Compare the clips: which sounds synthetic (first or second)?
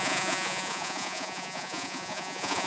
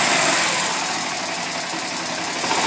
first